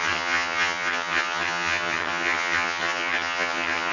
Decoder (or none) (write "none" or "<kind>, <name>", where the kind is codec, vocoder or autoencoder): vocoder, HiFi-GAN